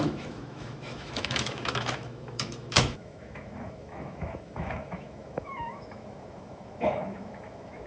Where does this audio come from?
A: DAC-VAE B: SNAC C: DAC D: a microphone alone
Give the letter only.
A